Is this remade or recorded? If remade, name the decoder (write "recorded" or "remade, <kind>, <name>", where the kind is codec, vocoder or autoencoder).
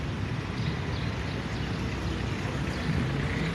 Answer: recorded